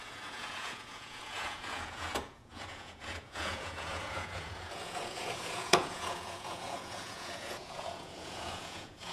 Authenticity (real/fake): fake